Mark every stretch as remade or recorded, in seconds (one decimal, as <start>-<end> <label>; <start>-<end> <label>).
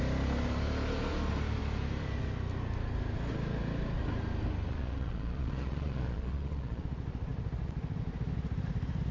0.0-4.7 recorded; 4.7-6.8 remade; 6.8-9.1 recorded